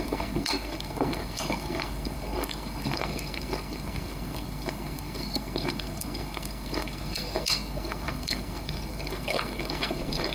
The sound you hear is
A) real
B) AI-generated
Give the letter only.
B